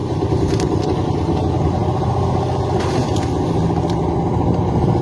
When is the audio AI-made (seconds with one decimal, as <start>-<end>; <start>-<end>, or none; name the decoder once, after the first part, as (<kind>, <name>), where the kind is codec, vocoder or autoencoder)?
0.0-0.8 (vocoder, BigVGAN v2)